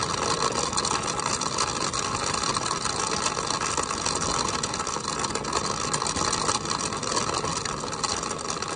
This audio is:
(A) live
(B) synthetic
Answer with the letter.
A